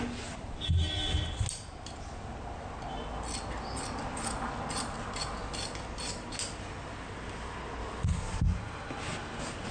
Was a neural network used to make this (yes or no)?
no